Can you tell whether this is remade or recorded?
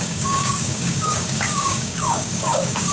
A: remade